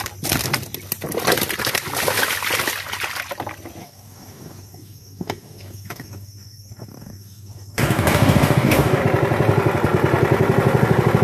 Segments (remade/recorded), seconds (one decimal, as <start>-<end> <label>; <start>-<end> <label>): 0.0-3.8 recorded; 3.8-9.0 remade; 9.0-11.2 recorded